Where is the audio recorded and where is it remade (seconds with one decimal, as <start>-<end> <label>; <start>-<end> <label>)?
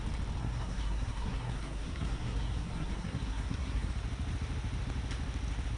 0.0-0.4 recorded; 0.4-3.9 remade; 3.9-5.8 recorded